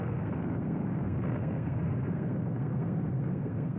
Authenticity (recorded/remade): remade